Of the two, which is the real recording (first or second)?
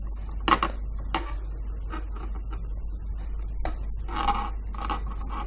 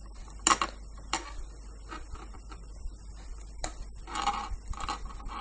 first